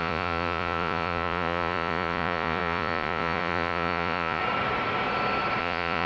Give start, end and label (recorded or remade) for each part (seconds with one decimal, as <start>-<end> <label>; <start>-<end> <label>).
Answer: 0.0-4.4 remade; 4.4-5.6 recorded; 5.6-6.1 remade